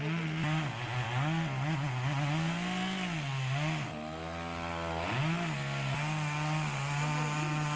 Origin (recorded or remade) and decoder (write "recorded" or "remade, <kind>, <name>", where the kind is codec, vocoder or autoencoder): recorded